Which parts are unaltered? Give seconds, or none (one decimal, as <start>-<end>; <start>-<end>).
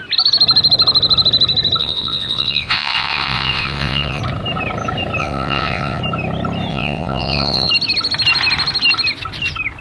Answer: 0.0-1.8; 4.2-5.2; 6.0-6.7; 7.7-9.8